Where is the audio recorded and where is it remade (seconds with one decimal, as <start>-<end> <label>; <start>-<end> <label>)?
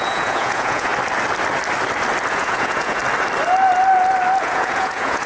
0.0-0.9 remade; 0.9-2.3 recorded; 2.3-3.0 remade; 3.0-4.4 recorded; 4.4-5.3 remade